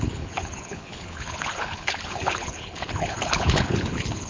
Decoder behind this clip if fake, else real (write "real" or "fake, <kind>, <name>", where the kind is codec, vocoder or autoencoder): fake, codec, HILCodec